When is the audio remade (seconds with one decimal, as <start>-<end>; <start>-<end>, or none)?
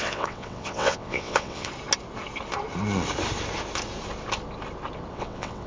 0.0-1.7; 5.1-5.7